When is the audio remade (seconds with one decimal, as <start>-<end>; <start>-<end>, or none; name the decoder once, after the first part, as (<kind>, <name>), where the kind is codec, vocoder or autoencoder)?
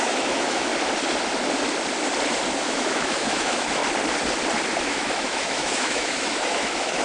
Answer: 0.0-0.7 (autoencoder, DAC-VAE); 2.6-3.8; 4.8-7.0